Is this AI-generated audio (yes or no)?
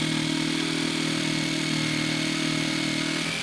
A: no